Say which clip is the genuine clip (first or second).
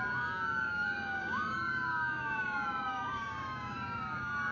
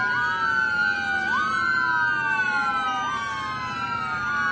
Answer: second